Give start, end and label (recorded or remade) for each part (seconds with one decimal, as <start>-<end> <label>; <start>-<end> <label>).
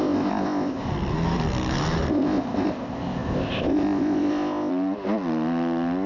0.0-0.9 remade; 0.9-2.1 recorded; 2.1-4.7 remade; 4.7-6.1 recorded